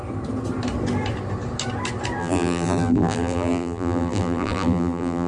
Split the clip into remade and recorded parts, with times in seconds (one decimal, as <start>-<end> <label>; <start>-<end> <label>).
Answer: 0.0-2.2 recorded; 2.2-5.3 remade